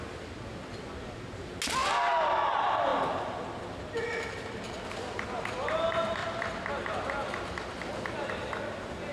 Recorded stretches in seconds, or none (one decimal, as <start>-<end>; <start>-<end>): 0.0-6.2; 6.7-7.2; 8.3-9.1